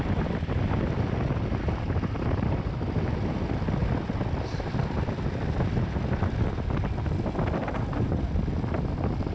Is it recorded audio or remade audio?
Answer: recorded